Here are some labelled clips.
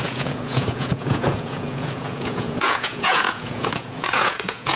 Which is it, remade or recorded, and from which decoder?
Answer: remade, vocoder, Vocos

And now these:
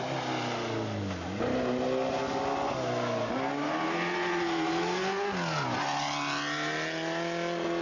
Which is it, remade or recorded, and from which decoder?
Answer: recorded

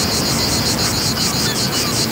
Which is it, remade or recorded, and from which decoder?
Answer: recorded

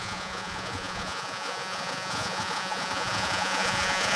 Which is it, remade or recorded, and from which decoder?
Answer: remade, vocoder, Vocos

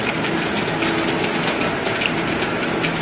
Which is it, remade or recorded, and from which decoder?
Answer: recorded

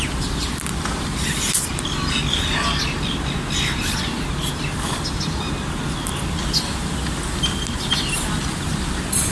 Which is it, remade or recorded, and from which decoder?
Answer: recorded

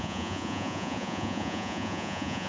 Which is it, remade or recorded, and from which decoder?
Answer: remade, vocoder, Vocos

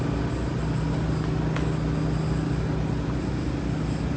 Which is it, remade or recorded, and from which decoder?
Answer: recorded